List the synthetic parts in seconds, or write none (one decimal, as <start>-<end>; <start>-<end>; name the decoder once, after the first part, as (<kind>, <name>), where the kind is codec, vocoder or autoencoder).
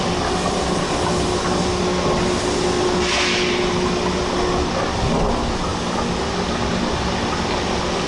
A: none